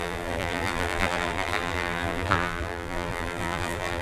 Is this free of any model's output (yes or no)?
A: no